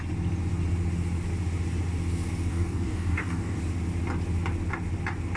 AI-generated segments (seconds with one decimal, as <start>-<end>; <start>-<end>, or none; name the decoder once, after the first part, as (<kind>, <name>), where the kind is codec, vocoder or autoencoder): 2.5-3.6 (codec, DAC)